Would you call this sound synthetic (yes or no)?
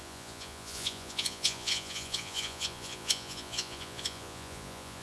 yes